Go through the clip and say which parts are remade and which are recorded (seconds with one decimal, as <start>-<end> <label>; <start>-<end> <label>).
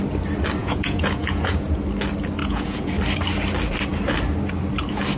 0.0-0.6 recorded; 0.6-1.8 remade; 1.8-2.4 recorded; 2.4-2.9 remade; 2.9-5.2 recorded